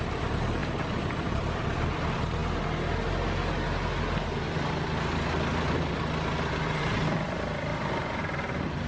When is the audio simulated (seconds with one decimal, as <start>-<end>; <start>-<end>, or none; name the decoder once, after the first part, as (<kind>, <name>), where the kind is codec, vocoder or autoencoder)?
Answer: 0.0-2.4 (vocoder, BigVGAN v2); 6.8-7.7; 8.2-8.9